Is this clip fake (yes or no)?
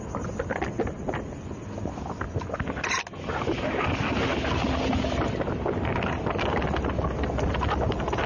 no